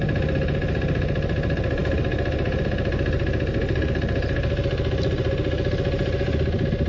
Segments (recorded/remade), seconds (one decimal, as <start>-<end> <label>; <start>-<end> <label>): 0.0-6.9 recorded